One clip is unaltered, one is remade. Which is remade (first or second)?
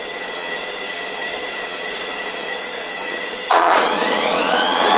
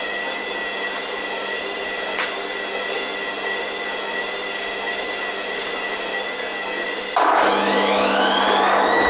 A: first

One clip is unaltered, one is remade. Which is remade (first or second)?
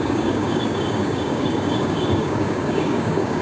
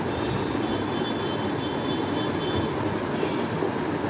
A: first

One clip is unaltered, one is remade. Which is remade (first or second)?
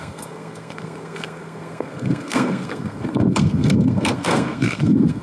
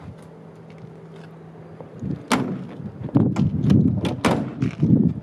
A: first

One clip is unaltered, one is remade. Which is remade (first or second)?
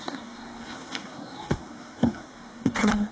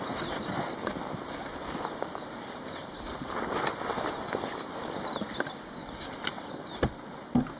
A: first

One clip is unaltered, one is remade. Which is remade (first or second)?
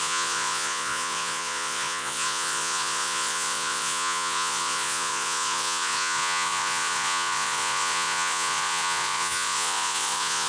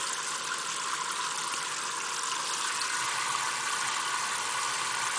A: first